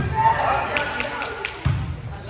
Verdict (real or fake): real